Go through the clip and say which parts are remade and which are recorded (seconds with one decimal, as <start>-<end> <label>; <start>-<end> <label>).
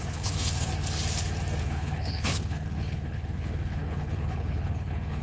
0.0-0.7 remade; 0.7-1.6 recorded; 1.6-5.2 remade